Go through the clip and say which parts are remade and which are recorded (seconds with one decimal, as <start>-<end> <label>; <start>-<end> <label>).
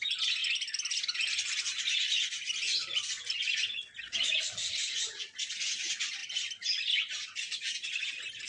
0.0-8.5 recorded